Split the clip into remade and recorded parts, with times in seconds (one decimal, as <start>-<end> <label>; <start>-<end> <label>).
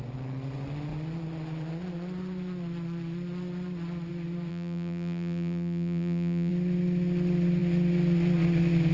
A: 0.0-4.5 recorded; 4.5-6.5 remade; 6.5-8.9 recorded